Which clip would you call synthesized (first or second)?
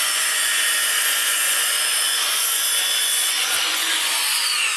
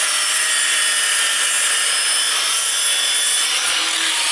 first